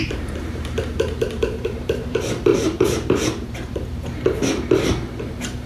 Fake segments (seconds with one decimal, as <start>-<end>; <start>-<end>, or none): 0.0-4.4; 5.3-5.7

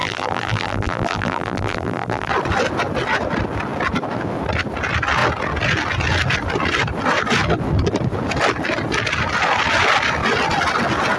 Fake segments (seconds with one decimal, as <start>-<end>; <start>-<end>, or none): 0.0-2.3

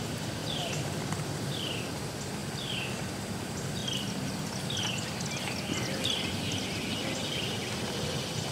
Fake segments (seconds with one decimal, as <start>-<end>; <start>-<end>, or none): 0.4-1.3; 3.8-4.3

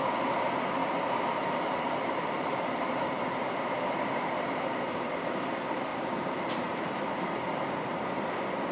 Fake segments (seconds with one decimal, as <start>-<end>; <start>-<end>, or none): 0.8-4.7; 5.9-8.1